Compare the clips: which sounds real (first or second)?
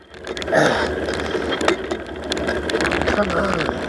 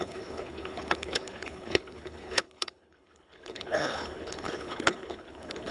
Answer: first